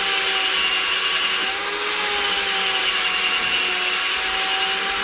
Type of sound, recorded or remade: recorded